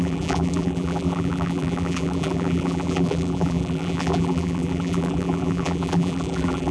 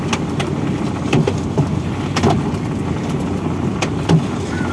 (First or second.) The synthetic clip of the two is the first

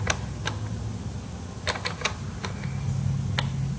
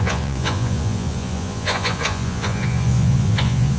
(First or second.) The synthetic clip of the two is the second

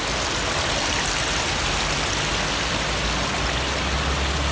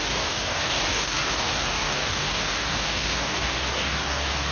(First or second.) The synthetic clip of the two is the second